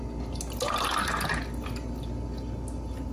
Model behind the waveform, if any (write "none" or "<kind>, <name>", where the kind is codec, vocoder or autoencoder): none